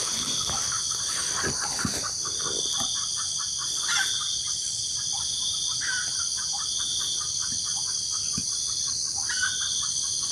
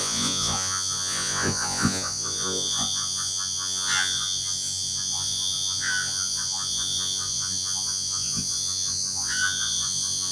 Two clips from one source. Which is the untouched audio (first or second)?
first